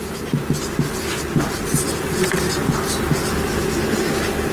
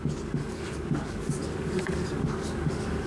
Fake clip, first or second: second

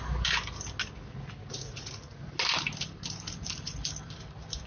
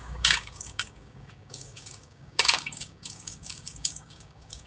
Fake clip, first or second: second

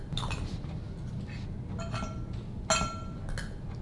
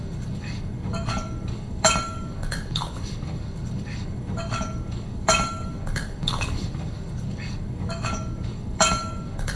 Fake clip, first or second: second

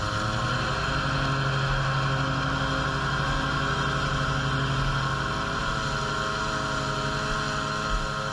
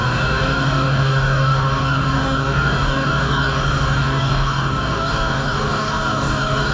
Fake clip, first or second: second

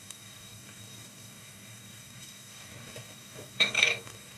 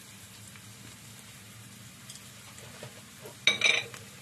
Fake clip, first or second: first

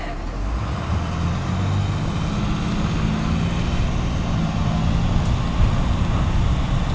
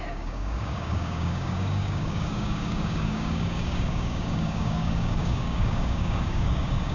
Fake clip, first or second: second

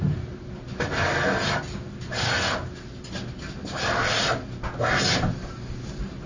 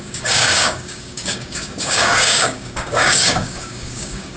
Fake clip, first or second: second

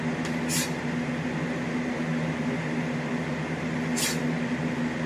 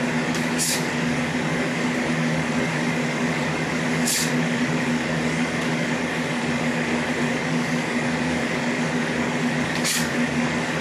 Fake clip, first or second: second